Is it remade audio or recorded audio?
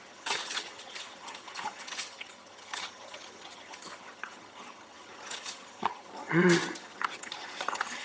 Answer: remade